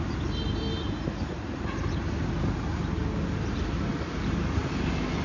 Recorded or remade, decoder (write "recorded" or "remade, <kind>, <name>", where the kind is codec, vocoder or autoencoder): recorded